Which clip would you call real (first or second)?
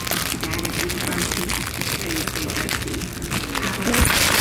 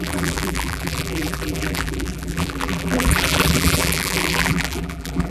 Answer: first